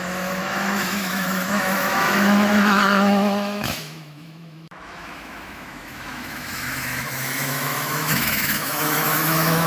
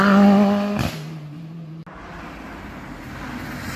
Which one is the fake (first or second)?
first